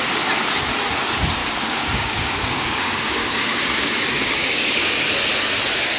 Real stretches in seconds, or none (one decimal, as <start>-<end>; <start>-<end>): 0.0-1.4; 5.0-6.0